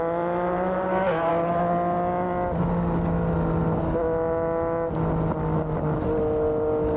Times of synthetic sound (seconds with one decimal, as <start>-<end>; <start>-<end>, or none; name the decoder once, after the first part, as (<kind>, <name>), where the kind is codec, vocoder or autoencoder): none